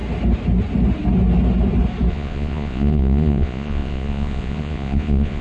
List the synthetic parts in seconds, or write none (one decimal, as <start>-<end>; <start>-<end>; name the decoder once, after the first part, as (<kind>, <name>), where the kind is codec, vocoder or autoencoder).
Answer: 2.1-5.4 (vocoder, Vocos)